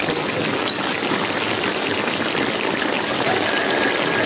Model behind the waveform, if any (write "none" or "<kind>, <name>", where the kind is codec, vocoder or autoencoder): none